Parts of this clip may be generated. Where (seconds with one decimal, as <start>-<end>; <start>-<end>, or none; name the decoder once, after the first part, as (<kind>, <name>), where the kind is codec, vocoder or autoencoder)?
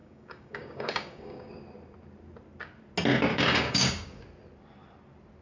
0.0-1.5 (codec, DAC); 3.3-4.2